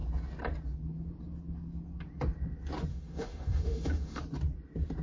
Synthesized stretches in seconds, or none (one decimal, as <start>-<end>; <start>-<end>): 2.9-4.2